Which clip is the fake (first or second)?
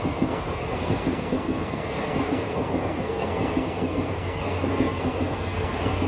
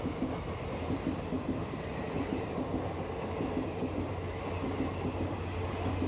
first